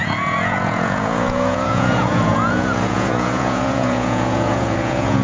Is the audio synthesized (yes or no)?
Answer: yes